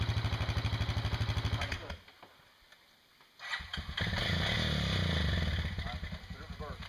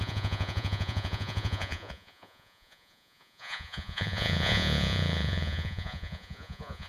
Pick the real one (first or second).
first